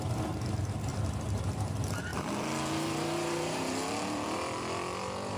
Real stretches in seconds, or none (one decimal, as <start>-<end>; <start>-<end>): 0.0-0.9; 1.4-2.1